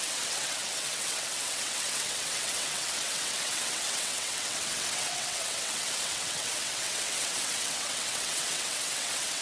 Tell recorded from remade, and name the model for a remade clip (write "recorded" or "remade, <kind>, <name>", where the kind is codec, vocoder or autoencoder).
remade, vocoder, WaveNeXt